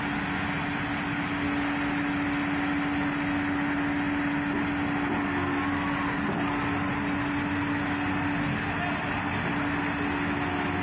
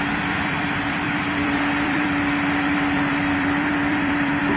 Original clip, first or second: first